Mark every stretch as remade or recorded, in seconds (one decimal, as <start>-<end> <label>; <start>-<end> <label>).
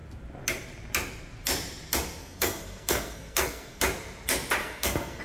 0.0-2.2 recorded; 2.2-3.8 remade; 3.8-4.6 recorded; 4.6-5.2 remade